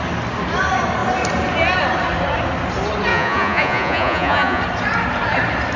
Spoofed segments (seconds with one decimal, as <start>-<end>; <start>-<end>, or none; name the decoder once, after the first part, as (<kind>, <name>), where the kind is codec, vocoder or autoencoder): 3.1-4.6 (vocoder, Vocos)